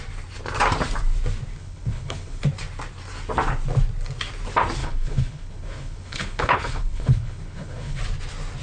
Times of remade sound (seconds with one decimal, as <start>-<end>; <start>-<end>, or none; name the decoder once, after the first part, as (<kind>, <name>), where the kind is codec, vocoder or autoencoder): 1.5-2.4 (codec, HILCodec); 4.8-8.0